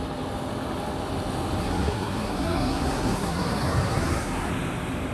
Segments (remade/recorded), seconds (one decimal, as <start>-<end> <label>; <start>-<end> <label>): 0.0-1.6 recorded; 1.6-4.5 remade; 4.5-5.1 recorded